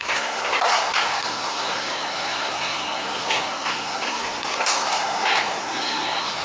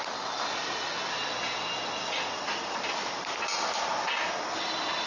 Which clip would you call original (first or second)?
second